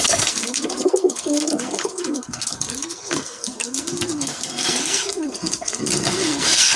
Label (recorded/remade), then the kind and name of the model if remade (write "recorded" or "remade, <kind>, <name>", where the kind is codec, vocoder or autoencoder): remade, codec, SNAC